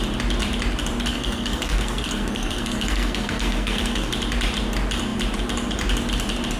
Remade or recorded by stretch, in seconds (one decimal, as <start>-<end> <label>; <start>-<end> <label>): 0.0-1.1 recorded; 1.1-4.1 remade; 4.1-6.6 recorded